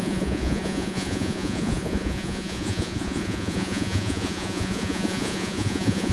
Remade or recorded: remade